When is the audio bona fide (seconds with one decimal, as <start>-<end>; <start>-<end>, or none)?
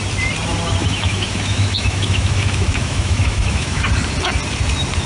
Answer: 0.0-0.8; 3.9-5.1